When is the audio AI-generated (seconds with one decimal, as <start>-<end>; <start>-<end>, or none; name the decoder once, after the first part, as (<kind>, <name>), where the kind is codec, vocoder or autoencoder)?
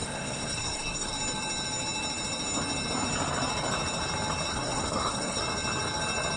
0.0-1.1 (codec, SNAC); 4.5-5.4